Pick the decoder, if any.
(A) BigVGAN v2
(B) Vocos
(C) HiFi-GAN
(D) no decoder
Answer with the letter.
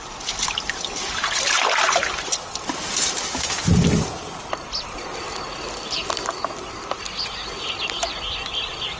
D